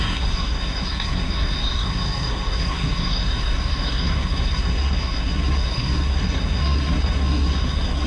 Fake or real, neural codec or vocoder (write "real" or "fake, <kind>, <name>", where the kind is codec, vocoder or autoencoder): fake, codec, SNAC